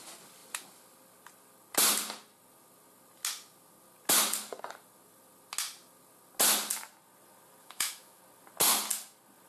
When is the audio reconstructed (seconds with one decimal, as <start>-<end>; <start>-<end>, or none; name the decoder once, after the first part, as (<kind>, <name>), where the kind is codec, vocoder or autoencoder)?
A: 7.6-8.2 (autoencoder, DAC-VAE)